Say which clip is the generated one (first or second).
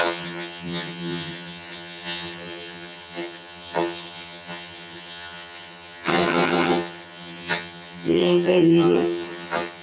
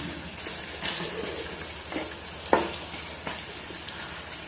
first